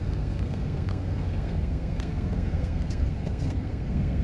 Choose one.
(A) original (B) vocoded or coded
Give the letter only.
B